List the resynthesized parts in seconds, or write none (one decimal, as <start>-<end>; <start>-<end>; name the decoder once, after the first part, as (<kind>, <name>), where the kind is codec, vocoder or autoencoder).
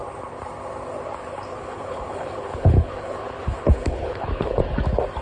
1.5-4.6 (codec, HILCodec)